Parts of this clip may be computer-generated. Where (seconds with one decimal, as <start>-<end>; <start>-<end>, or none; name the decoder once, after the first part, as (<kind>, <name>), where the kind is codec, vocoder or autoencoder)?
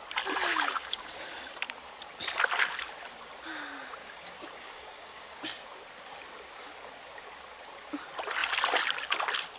0.5-1.2 (codec, DAC); 4.0-5.4